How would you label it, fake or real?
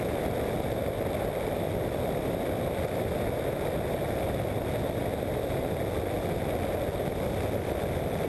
real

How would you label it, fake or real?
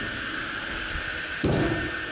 real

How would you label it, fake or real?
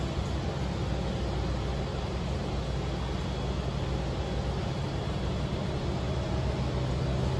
real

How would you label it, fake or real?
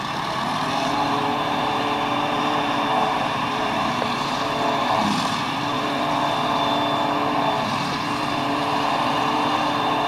fake